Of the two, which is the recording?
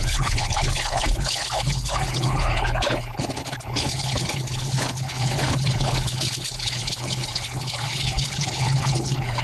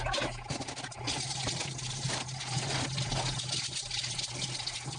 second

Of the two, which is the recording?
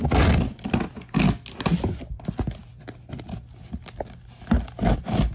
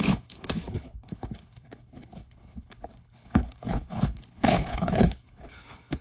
first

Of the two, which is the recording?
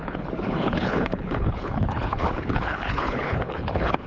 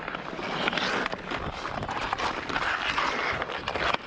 second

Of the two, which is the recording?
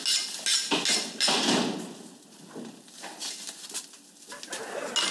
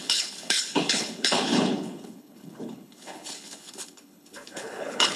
first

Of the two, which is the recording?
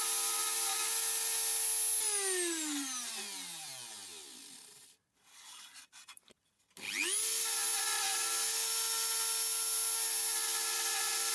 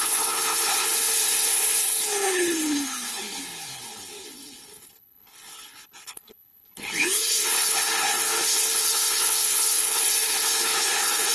first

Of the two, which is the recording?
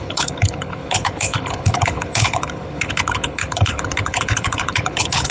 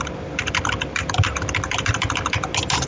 second